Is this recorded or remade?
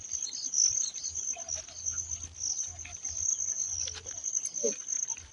recorded